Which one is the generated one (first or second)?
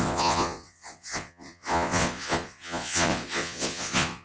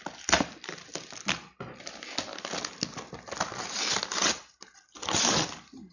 first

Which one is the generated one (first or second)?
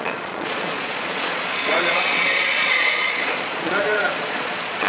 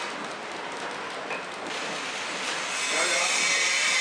first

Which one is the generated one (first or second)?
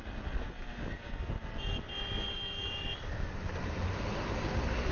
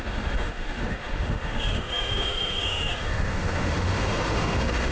second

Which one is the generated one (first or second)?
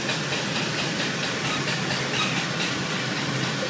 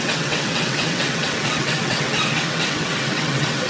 second